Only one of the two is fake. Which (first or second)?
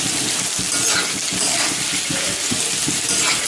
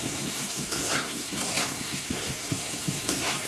second